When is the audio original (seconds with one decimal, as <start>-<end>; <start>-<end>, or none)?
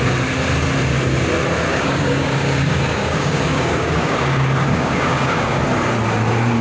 0.0-1.7; 5.6-6.6